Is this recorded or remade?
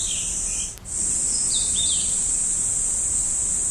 recorded